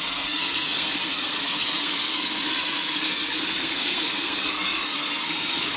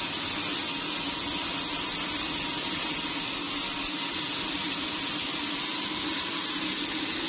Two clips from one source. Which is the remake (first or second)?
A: first